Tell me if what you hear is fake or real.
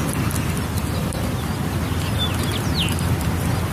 real